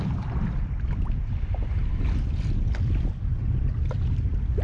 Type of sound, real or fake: real